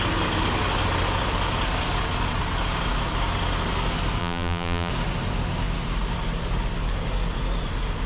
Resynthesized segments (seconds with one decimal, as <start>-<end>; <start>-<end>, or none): 4.2-4.9